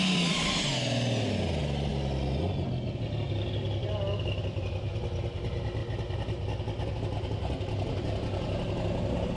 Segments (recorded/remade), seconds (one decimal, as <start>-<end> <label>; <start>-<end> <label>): 0.0-9.4 recorded